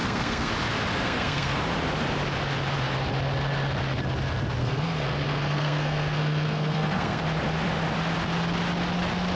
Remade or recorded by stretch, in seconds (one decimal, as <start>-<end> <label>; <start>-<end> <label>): 0.0-0.5 remade; 0.5-0.9 recorded; 0.9-1.6 remade; 1.6-4.6 recorded; 4.6-7.2 remade; 7.2-9.4 recorded